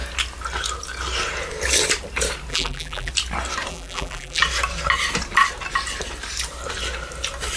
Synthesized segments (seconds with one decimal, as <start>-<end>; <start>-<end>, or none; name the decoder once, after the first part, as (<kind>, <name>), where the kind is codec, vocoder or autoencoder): 2.5-3.1 (vocoder, BigVGAN v2); 3.7-4.4

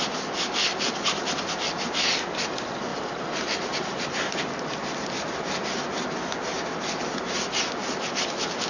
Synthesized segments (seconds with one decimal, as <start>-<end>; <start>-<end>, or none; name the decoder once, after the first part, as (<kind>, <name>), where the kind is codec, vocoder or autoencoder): 2.9-4.4 (vocoder, BigVGAN v2)

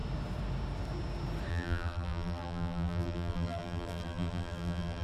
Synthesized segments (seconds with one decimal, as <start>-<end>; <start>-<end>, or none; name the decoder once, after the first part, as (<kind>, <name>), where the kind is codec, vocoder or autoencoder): 1.5-5.0 (vocoder, BigVGAN v2)

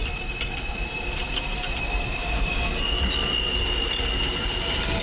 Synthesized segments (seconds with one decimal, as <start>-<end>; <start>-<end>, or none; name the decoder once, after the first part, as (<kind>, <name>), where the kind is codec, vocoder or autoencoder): 0.7-2.5 (vocoder, BigVGAN v2)

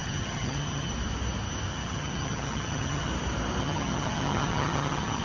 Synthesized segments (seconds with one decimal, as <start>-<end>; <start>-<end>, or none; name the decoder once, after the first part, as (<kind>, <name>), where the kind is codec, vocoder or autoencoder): 0.0-0.9 (vocoder, HiFi-GAN); 1.7-3.1; 3.6-5.2